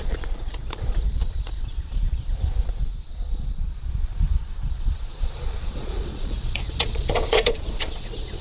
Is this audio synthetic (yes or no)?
yes